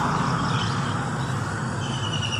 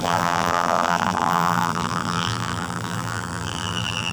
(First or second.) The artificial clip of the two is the second